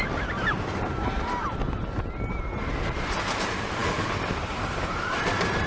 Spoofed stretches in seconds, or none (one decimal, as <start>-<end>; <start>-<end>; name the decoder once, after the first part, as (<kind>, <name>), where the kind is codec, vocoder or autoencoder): 0.0-1.6 (vocoder, BigVGAN v2); 2.6-5.7